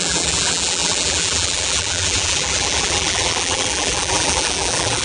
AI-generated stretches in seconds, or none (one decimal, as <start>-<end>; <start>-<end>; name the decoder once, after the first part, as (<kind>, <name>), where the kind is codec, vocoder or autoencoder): 0.0-5.0 (vocoder, BigVGAN v2)